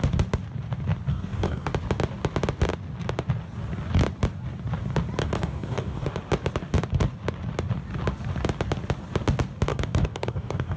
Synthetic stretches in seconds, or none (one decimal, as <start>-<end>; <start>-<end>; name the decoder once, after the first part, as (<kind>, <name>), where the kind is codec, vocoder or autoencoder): 1.1-1.7 (codec, DAC); 5.2-6.2; 9.7-10.8